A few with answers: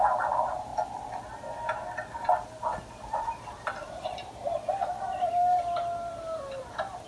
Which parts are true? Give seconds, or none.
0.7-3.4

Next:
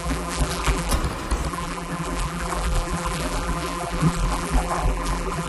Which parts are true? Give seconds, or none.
0.9-1.5